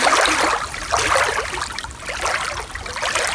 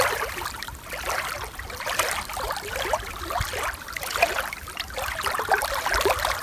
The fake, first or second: second